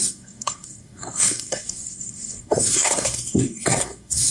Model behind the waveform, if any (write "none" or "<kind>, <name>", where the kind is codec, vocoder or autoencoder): codec, SNAC